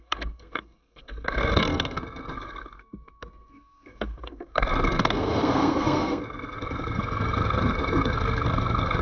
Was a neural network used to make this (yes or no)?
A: yes